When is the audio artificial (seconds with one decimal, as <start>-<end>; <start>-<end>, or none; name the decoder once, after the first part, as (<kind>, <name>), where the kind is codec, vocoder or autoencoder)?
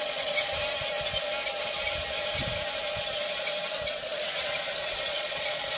0.0-0.5 (vocoder, Vocos); 4.0-5.8